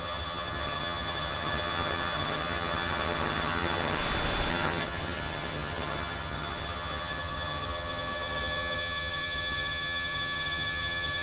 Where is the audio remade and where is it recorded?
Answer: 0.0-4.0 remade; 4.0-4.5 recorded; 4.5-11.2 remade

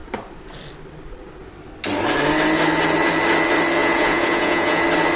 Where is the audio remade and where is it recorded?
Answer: 0.0-3.8 recorded; 3.8-4.8 remade; 4.8-5.2 recorded

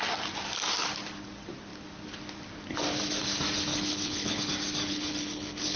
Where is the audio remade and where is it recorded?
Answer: 0.0-3.7 recorded; 3.7-4.4 remade; 4.4-4.9 recorded; 4.9-5.8 remade

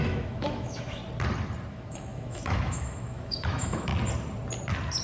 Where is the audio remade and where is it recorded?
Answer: 0.0-1.0 remade; 1.0-1.7 recorded; 1.7-3.9 remade; 3.9-5.0 recorded

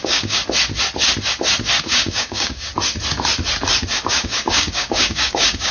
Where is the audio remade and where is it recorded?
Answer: 0.0-0.4 remade; 0.4-1.8 recorded; 1.8-2.7 remade; 2.7-4.1 recorded; 4.1-5.7 remade

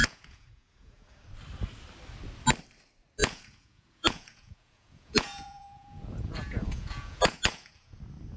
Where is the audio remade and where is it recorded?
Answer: 0.0-1.2 remade; 1.2-3.2 recorded; 3.2-8.0 remade; 8.0-8.4 recorded

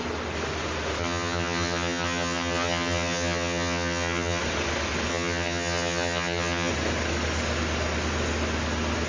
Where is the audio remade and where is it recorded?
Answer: 0.0-1.0 recorded; 1.0-4.4 remade; 4.4-5.1 recorded; 5.1-6.7 remade; 6.7-9.1 recorded